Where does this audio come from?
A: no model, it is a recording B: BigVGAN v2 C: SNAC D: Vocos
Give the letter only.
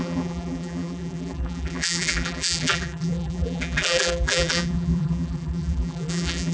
B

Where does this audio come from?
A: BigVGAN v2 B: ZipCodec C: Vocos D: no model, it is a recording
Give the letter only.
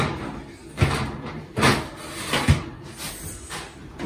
D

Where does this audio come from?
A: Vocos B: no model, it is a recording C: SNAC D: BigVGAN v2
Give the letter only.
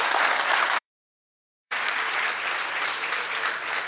D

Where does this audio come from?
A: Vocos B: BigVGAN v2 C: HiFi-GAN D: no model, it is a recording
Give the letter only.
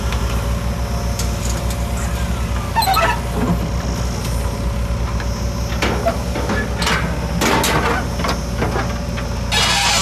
D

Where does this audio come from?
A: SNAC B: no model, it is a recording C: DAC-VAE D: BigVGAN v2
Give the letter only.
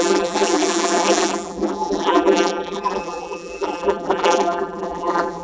D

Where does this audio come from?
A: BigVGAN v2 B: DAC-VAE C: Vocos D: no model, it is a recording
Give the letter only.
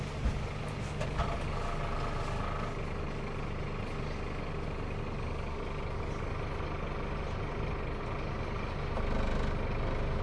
D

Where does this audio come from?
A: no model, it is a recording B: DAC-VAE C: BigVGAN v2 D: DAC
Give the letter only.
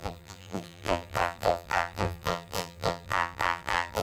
C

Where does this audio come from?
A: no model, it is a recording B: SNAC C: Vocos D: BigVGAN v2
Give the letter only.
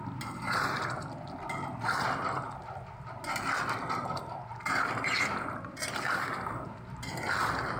A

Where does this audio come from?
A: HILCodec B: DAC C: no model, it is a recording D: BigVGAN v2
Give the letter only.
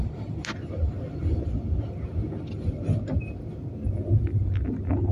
C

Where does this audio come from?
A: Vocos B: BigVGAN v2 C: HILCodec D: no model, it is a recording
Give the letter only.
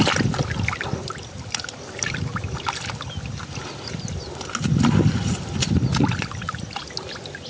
D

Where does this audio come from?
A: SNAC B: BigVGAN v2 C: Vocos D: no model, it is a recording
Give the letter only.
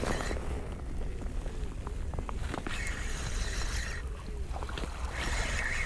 D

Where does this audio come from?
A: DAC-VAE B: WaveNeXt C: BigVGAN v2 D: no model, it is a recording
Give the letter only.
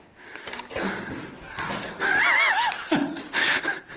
D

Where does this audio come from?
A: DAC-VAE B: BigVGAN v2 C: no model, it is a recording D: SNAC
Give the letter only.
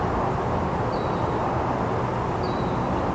C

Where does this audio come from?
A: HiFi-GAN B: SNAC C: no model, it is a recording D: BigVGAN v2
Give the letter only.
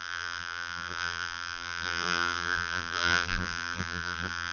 D